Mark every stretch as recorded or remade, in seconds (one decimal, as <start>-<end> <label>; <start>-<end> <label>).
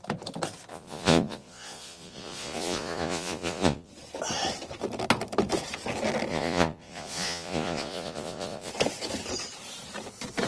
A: 0.0-0.7 recorded; 0.7-3.9 remade; 3.9-6.3 recorded; 6.3-8.7 remade; 8.7-10.5 recorded